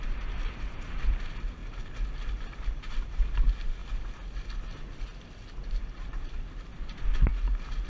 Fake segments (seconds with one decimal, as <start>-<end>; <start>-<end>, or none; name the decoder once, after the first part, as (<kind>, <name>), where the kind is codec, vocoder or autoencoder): 0.0-1.6 (vocoder, BigVGAN v2); 2.6-3.8; 5.7-6.7